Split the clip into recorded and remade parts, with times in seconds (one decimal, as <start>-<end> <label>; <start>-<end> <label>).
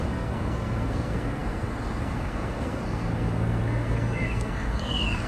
0.0-5.3 remade